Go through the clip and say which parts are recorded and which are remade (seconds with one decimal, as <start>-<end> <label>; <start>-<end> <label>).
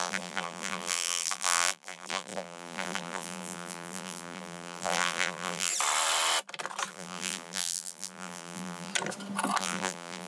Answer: 0.0-5.7 remade; 5.7-6.9 recorded; 6.9-8.9 remade; 8.9-9.6 recorded; 9.6-10.3 remade